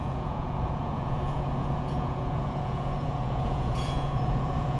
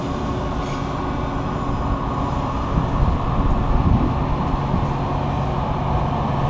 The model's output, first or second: first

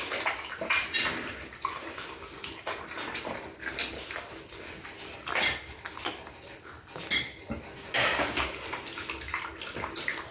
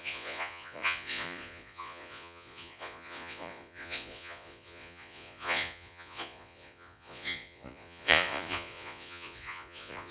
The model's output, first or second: second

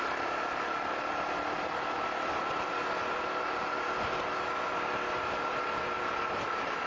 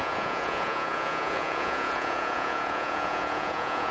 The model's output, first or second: second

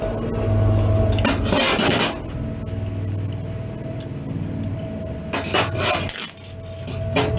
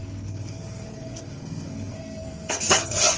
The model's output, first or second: second